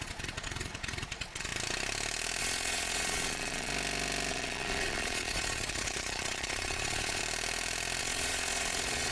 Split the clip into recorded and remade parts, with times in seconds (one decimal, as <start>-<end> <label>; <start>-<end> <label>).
0.0-1.5 remade; 1.5-2.4 recorded; 2.4-3.7 remade; 3.7-4.3 recorded; 4.3-7.2 remade; 7.2-8.0 recorded; 8.0-9.1 remade